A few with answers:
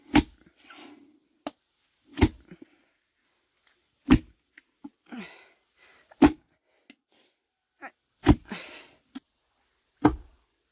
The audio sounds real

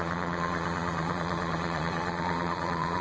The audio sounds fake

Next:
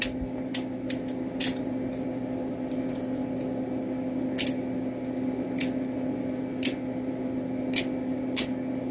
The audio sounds real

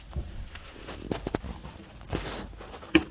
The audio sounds real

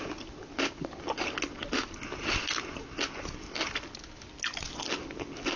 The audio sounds real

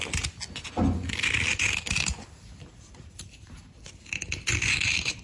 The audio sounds real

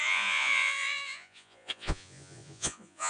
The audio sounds fake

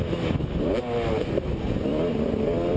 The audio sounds real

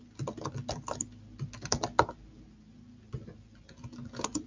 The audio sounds real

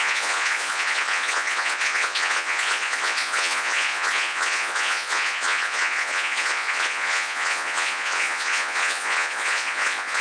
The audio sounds fake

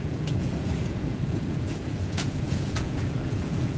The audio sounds fake